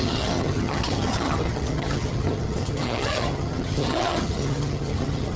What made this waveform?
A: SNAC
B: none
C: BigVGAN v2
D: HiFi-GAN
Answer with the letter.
D